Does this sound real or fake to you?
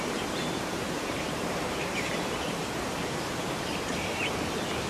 fake